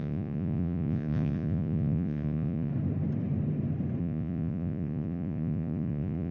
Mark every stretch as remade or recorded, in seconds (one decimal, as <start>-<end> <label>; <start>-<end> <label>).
0.0-2.7 remade; 2.7-4.0 recorded; 4.0-6.3 remade